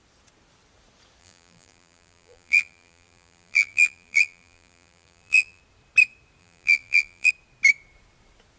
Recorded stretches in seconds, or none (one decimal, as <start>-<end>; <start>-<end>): 0.0-1.2; 5.6-6.4; 7.3-8.6